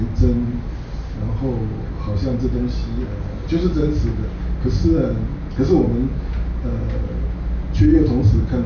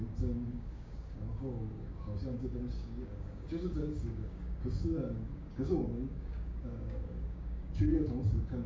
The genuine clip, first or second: first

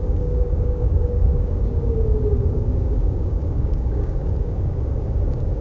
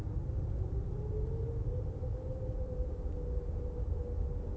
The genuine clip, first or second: second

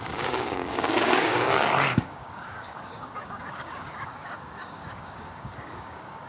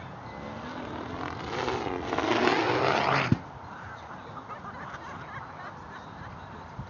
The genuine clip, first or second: second